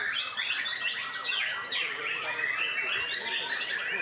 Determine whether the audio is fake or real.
real